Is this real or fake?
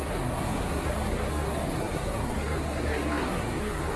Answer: fake